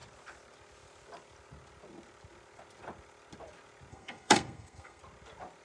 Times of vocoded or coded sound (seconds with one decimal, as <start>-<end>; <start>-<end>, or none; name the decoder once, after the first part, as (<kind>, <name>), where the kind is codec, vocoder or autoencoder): 3.9-5.0 (codec, SNAC)